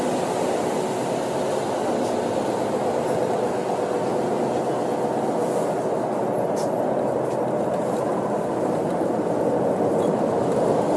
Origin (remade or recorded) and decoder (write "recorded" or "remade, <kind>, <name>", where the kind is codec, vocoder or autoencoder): recorded